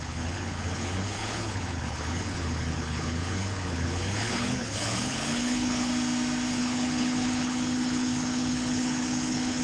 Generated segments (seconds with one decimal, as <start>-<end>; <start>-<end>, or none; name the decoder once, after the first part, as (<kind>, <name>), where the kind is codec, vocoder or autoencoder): 0.0-5.9 (codec, HILCodec); 6.5-9.6